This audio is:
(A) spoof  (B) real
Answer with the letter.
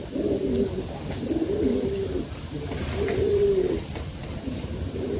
B